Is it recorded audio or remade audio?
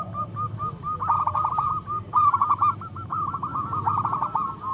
recorded